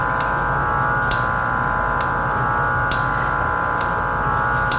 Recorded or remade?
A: recorded